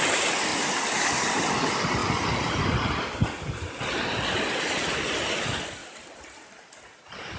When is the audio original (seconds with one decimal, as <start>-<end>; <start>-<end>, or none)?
0.0-7.4